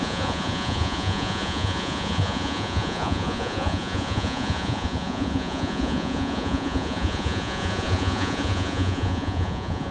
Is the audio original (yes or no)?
no